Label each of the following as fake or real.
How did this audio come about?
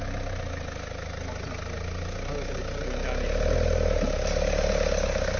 real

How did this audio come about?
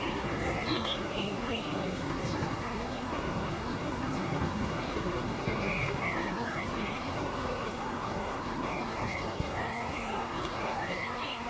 fake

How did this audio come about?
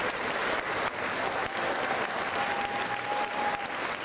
real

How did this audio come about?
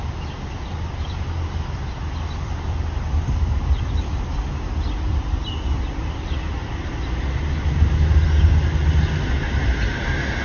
real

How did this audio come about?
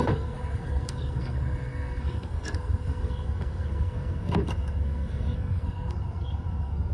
fake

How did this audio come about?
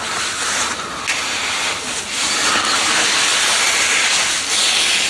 real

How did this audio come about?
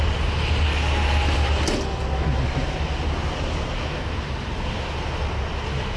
real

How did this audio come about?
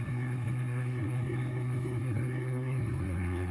fake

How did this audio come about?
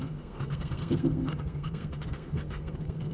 fake